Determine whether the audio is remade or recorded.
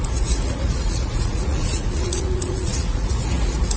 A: remade